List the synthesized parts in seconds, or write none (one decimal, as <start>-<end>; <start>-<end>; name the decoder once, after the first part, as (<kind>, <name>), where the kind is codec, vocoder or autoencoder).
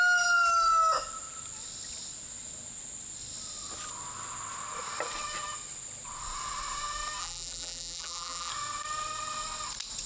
7.2-8.5 (vocoder, BigVGAN v2)